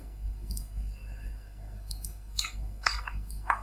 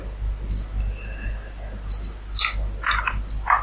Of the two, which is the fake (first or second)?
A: first